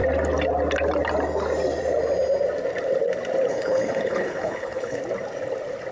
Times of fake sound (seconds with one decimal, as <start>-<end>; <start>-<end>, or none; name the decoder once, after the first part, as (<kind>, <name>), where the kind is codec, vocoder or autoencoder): 3.5-5.0 (codec, HILCodec)